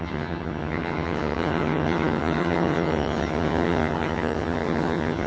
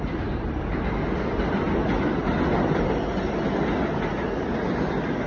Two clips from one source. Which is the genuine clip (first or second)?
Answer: second